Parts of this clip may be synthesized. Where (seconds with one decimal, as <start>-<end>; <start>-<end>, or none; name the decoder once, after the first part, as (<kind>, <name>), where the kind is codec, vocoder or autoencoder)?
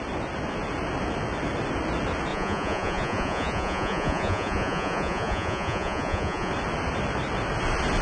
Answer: 2.3-6.5 (vocoder, Vocos)